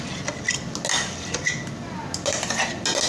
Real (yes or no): yes